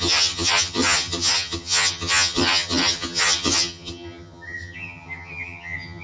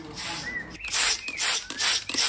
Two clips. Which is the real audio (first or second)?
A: second